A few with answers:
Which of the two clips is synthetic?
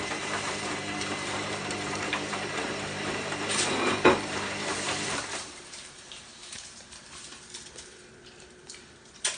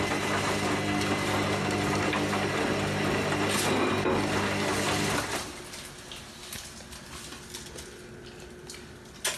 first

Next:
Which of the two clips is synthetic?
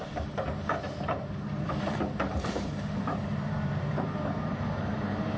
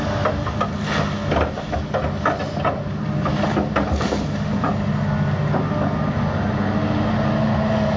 first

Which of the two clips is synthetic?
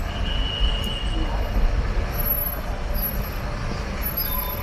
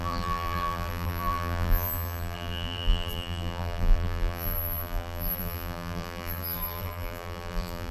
second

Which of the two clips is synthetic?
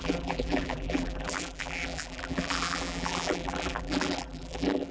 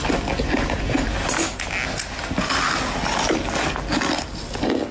first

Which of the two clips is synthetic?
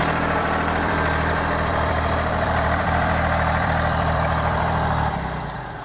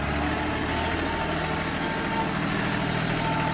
first